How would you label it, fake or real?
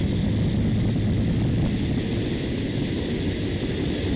real